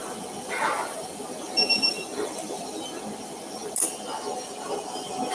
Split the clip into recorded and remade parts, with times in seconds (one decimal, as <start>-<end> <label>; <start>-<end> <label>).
0.0-5.3 recorded